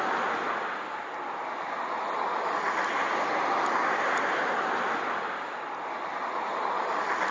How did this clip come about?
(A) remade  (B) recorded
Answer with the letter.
B